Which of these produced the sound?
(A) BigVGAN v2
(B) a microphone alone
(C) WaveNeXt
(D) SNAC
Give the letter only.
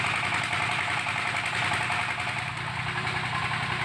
B